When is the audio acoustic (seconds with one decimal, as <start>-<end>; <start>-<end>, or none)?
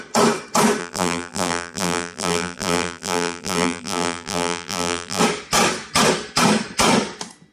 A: 0.0-0.8; 5.2-7.5